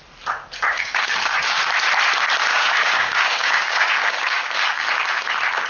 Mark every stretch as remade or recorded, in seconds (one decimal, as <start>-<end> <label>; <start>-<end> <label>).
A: 0.0-0.7 recorded; 0.7-1.6 remade; 1.6-2.5 recorded; 2.5-5.2 remade; 5.2-5.7 recorded

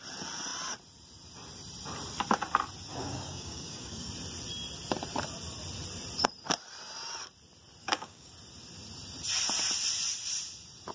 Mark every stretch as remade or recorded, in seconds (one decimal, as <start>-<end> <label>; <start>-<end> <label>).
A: 0.0-2.9 recorded; 2.9-4.1 remade; 4.1-7.8 recorded; 7.8-8.3 remade; 8.3-10.9 recorded

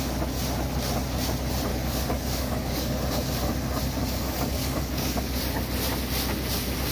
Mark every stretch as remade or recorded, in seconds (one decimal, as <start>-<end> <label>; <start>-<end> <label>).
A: 0.0-1.7 recorded; 1.7-3.0 remade; 3.0-4.0 recorded; 4.0-5.4 remade; 5.4-6.9 recorded

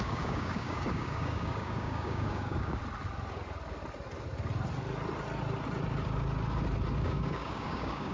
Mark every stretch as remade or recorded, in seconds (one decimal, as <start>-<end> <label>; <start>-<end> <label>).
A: 0.0-2.8 remade; 2.8-7.0 recorded; 7.0-8.1 remade

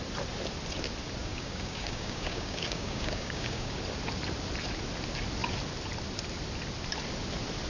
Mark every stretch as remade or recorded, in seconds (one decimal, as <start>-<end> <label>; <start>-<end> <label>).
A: 0.0-1.2 recorded; 1.2-3.8 remade; 3.8-7.7 recorded

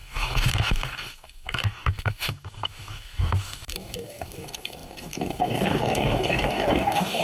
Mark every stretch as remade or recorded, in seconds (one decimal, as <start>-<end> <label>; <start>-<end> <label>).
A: 0.0-7.2 remade

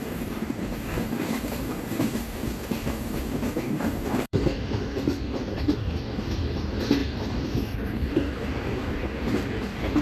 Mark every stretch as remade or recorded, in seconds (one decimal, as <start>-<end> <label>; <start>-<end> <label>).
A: 0.0-10.0 remade